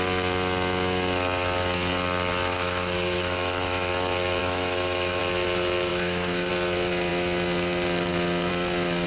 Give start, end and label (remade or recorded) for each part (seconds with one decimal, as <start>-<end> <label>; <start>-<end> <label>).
0.0-2.5 recorded; 2.5-3.9 remade; 3.9-4.4 recorded; 4.4-5.2 remade; 5.2-5.9 recorded; 5.9-6.5 remade; 6.5-9.1 recorded

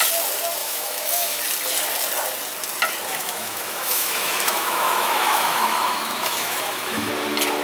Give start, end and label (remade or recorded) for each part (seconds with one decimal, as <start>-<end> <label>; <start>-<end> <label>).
0.0-0.6 recorded; 0.6-1.4 remade; 1.4-3.1 recorded; 3.1-7.1 remade; 7.1-7.6 recorded

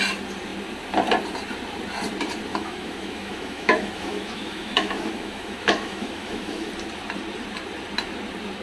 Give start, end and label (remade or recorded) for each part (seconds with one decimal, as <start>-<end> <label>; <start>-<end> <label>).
0.0-2.5 recorded; 2.5-6.7 remade; 6.7-8.6 recorded

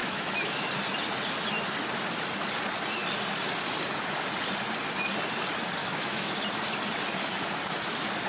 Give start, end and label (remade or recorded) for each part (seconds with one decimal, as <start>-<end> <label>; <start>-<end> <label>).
0.0-0.7 remade; 0.7-5.8 recorded; 5.8-6.3 remade; 6.3-8.3 recorded

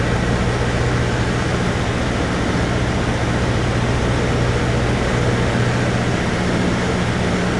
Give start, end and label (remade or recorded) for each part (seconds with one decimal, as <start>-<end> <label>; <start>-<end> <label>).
0.0-7.6 recorded

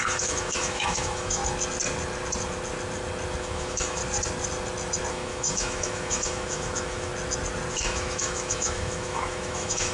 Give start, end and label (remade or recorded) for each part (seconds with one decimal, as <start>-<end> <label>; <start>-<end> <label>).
0.0-1.4 remade; 1.4-3.4 recorded; 3.4-4.0 remade; 4.0-5.1 recorded; 5.1-7.1 remade; 7.1-7.7 recorded; 7.7-9.9 remade